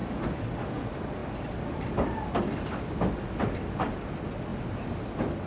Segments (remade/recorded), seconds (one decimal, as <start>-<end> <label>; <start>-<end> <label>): 0.0-5.5 recorded